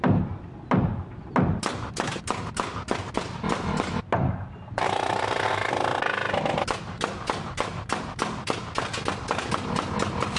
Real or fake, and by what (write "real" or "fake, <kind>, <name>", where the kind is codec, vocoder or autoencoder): real